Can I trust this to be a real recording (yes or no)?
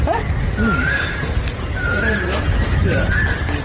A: yes